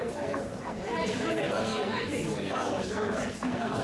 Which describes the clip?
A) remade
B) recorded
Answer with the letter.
A